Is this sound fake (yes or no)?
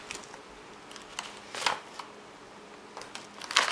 no